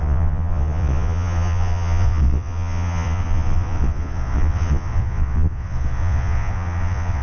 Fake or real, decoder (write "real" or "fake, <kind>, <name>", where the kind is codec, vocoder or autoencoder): fake, vocoder, Vocos